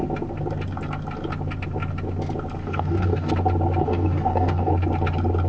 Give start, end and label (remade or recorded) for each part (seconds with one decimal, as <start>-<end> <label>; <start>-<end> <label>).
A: 0.0-2.6 recorded; 2.6-3.3 remade; 3.3-3.8 recorded; 3.8-4.7 remade; 4.7-5.5 recorded